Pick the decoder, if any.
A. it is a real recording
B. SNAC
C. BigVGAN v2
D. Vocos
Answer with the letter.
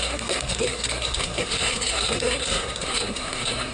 B